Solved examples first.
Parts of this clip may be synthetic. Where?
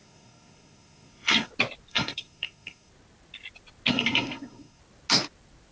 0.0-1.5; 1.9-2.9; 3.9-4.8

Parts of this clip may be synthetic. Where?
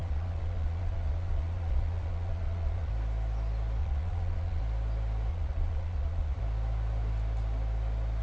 0.0-2.9; 3.8-4.6; 5.3-6.4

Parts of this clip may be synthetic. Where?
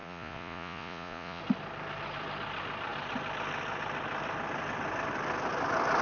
0.0-1.4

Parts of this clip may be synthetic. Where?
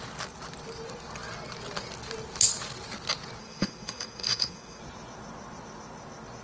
3.4-4.8